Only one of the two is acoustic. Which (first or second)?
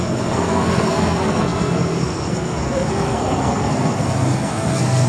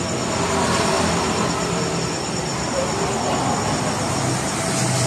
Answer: second